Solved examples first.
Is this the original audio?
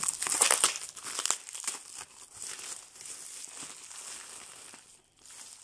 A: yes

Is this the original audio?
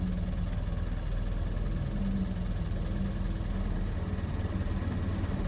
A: yes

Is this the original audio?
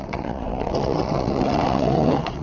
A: no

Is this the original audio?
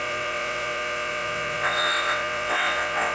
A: no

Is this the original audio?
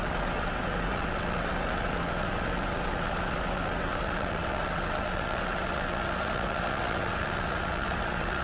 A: no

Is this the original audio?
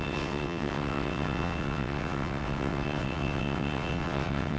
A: no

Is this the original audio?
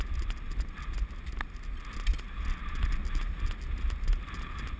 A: yes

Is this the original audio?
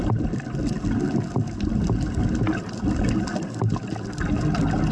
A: yes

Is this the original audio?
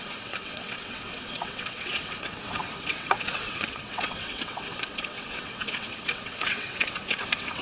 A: no